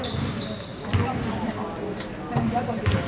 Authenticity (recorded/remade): recorded